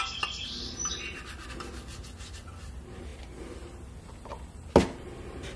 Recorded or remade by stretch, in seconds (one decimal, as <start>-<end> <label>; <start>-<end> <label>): 0.0-5.6 recorded